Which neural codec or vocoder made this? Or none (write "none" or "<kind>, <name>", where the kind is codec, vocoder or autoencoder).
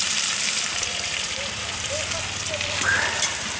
vocoder, BigVGAN v2